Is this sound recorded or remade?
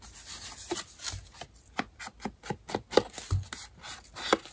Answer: recorded